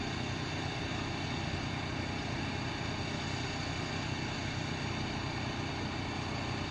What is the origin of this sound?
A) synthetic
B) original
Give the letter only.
B